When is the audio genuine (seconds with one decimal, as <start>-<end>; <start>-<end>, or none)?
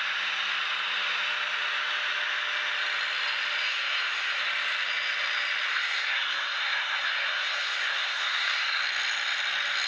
0.0-3.7; 4.4-5.7; 8.8-9.9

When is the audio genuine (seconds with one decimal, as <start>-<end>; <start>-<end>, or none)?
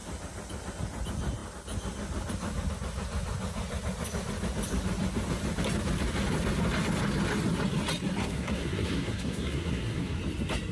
0.0-8.2; 10.2-10.7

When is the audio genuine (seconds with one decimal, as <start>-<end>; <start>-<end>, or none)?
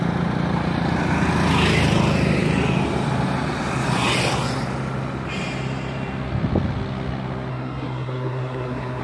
0.0-7.5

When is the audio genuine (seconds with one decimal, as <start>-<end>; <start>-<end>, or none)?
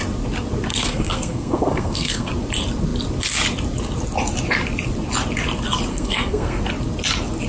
0.0-0.7; 2.3-5.9; 6.6-7.5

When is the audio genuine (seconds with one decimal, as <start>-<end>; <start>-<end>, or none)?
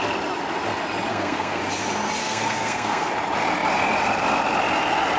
0.0-1.1; 1.6-2.2; 3.1-5.2